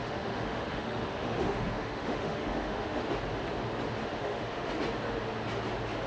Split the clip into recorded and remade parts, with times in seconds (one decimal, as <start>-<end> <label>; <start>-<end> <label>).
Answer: 0.0-3.0 remade; 3.0-4.0 recorded; 4.0-4.7 remade; 4.7-6.1 recorded